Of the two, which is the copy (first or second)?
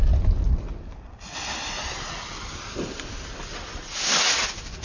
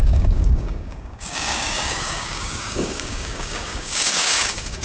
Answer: second